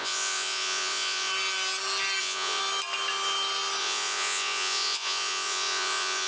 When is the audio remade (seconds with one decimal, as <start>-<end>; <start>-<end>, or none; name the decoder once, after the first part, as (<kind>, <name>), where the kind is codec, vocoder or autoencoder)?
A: 0.0-1.3 (vocoder, Vocos); 2.2-2.6; 3.8-6.3